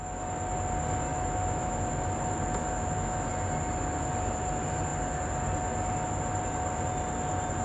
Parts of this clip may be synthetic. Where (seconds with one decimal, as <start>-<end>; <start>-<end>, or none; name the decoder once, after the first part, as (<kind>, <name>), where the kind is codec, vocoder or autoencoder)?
1.1-1.9 (autoencoder, DAC-VAE); 2.6-3.3